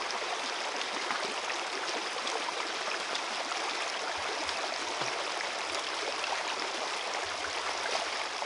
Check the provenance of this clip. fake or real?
real